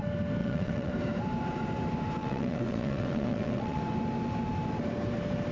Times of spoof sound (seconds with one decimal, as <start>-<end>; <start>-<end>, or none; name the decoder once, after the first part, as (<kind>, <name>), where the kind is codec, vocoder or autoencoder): 0.4-0.9 (vocoder, WaveNeXt); 2.2-3.8